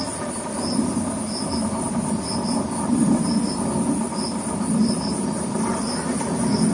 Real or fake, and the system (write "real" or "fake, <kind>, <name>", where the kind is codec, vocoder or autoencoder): real